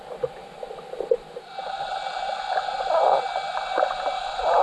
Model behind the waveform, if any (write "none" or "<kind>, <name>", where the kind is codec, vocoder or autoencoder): none